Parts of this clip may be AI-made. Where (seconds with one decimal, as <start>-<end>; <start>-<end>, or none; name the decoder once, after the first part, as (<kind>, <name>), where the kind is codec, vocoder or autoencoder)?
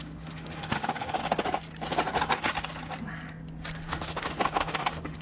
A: 0.0-1.2 (autoencoder, DAC-VAE); 3.7-5.2